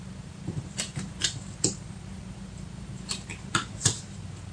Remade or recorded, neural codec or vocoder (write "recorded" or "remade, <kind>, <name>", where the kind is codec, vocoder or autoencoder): remade, vocoder, BigVGAN v2